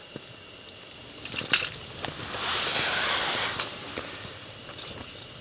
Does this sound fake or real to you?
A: real